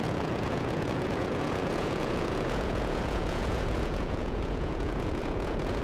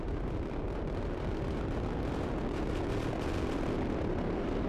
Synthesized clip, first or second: first